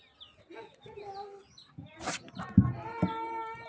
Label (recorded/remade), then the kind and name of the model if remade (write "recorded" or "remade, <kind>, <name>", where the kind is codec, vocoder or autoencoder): recorded